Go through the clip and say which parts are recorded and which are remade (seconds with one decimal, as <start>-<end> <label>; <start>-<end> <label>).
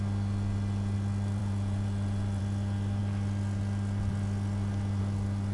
0.0-1.4 recorded; 1.4-2.4 remade; 2.4-5.5 recorded